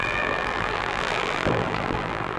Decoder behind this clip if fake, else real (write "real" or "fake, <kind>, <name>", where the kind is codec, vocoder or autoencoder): fake, vocoder, BigVGAN v2